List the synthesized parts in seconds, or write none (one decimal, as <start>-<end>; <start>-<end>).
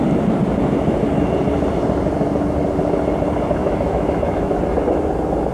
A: 3.6-4.6